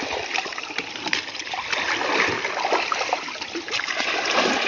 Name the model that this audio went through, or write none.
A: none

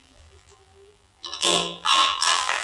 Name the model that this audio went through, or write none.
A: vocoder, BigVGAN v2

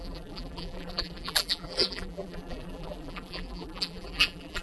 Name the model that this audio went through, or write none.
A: vocoder, BigVGAN v2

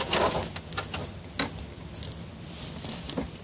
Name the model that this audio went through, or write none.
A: none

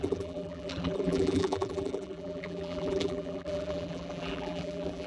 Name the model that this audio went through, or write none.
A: vocoder, BigVGAN v2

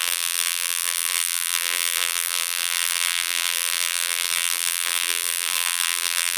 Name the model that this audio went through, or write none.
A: vocoder, BigVGAN v2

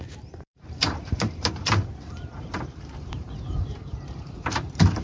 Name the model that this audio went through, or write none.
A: vocoder, BigVGAN v2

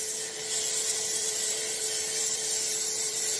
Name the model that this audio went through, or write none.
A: vocoder, BigVGAN v2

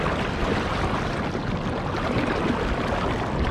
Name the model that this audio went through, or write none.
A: none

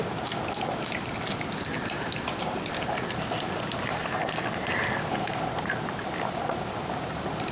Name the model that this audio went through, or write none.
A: none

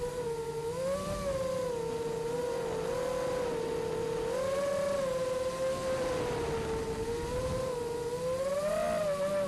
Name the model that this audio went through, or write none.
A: none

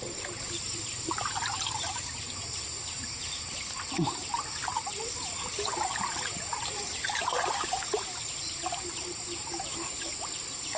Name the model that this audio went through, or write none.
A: vocoder, BigVGAN v2